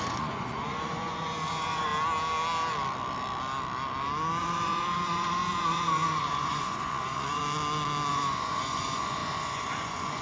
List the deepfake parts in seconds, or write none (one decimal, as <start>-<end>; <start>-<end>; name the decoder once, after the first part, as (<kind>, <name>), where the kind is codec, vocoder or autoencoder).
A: 0.0-1.9 (vocoder, Vocos); 4.4-7.4; 8.1-10.2